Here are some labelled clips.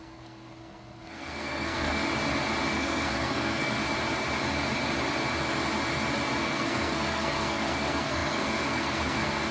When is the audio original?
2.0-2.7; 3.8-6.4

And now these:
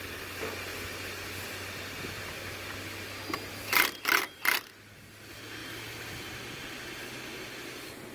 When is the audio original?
0.0-8.1